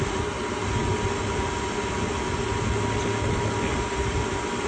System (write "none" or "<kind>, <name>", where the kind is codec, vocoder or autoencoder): none